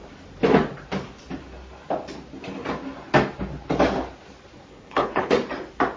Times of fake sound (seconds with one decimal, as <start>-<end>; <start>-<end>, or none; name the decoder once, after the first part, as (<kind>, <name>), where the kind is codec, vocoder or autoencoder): 4.7-5.3 (codec, HILCodec)